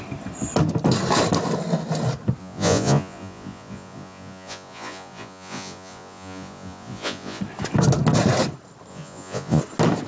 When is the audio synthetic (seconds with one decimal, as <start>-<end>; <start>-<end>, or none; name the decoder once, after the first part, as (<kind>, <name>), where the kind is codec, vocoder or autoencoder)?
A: 2.4-7.4 (vocoder, Vocos); 8.9-9.6

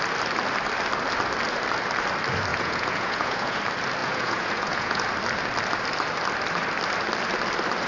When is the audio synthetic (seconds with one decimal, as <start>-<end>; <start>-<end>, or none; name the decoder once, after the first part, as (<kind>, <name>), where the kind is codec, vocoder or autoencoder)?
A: 2.5-3.6 (vocoder, Vocos); 4.0-5.0

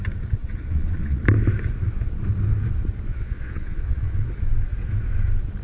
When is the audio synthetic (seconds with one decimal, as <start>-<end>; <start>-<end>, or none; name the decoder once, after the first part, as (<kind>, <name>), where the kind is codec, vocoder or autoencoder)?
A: 0.4-1.2 (vocoder, Vocos); 3.1-4.3

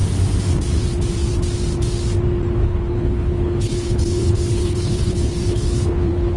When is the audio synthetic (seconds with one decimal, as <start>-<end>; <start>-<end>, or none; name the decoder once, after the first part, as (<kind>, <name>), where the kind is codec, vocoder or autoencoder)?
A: 2.6-6.4 (codec, HILCodec)